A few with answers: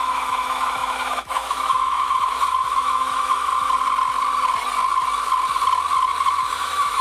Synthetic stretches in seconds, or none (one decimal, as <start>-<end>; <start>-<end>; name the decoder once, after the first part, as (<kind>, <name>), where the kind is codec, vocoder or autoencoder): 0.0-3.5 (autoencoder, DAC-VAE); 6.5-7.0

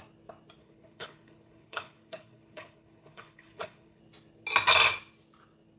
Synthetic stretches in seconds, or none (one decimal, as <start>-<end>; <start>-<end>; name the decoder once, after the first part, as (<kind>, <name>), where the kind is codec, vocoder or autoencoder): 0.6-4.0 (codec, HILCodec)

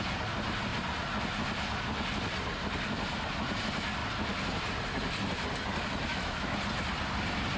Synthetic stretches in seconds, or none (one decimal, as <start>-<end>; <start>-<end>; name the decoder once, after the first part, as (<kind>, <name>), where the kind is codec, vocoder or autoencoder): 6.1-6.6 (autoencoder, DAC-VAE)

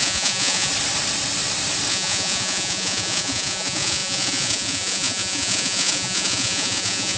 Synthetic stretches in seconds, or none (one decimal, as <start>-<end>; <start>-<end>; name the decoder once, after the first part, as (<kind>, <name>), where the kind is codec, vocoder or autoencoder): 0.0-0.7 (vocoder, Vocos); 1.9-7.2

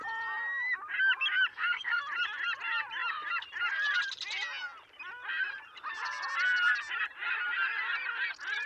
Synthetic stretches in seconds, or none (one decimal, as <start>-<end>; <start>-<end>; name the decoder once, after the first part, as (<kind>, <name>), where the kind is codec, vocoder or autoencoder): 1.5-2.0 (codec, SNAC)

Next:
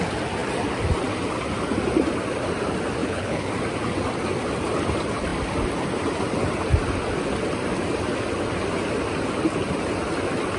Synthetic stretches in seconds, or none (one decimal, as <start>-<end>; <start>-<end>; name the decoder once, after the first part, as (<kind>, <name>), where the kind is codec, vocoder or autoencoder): 3.0-3.5 (codec, HILCodec)